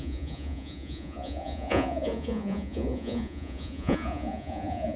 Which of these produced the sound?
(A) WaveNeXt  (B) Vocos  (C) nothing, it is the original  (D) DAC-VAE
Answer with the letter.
B